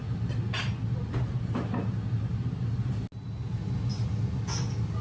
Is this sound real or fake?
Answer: real